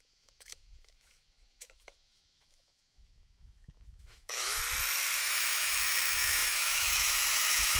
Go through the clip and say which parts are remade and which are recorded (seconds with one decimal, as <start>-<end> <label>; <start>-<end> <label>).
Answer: 0.0-4.6 remade; 4.6-5.2 recorded; 5.2-7.8 remade